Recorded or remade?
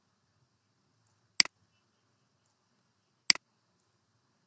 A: recorded